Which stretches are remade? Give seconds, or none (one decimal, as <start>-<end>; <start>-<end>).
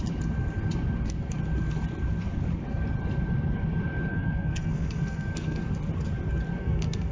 4.1-5.6; 6.6-7.1